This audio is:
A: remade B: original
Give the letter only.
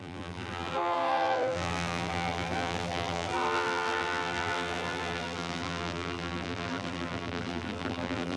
A